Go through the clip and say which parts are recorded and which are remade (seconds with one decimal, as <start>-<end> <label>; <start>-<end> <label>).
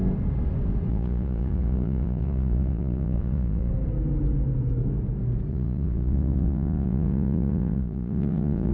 0.0-0.9 recorded; 0.9-3.7 remade; 3.7-5.5 recorded; 5.5-8.7 remade